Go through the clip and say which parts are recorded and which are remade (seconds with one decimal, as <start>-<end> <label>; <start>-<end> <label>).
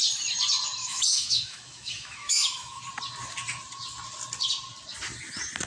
0.0-0.8 recorded; 0.8-2.8 remade; 2.8-5.7 recorded